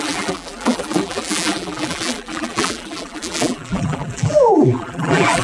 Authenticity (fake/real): fake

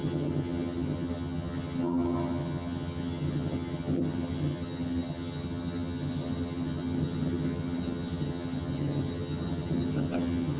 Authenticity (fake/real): fake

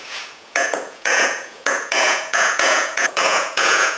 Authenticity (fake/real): fake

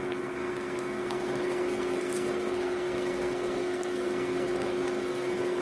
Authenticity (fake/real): fake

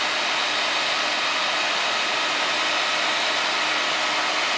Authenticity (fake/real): real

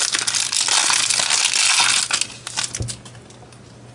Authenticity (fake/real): real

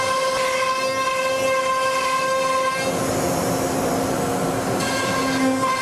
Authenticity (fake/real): real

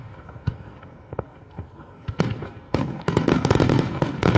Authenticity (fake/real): fake